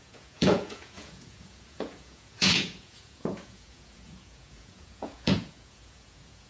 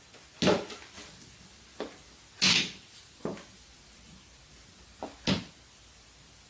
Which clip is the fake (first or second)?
first